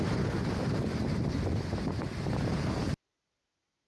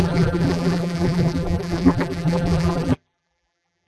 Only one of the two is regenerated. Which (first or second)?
second